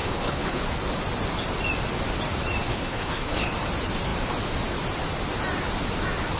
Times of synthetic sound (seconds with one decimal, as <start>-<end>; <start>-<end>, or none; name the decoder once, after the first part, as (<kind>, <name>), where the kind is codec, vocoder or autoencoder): 0.0-0.6 (codec, HILCodec); 2.7-3.5